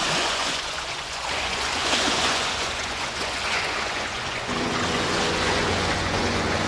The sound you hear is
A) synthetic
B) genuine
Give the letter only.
A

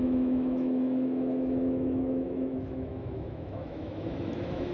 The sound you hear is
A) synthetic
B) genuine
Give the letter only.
A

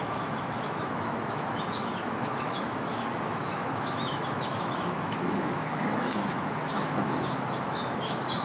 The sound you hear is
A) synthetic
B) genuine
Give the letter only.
A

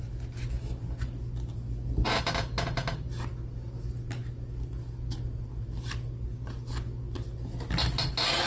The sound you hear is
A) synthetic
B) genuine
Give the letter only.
B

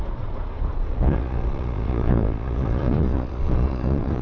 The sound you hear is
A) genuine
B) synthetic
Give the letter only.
B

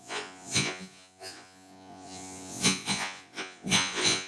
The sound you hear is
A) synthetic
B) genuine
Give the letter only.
A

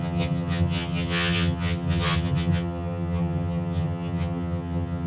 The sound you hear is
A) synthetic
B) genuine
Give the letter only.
A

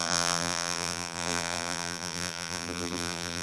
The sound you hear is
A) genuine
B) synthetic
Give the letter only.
B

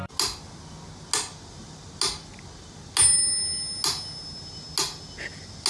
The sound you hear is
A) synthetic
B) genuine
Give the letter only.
B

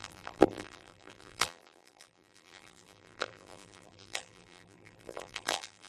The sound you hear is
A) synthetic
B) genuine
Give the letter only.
A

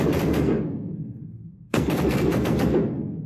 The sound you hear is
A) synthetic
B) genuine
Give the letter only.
A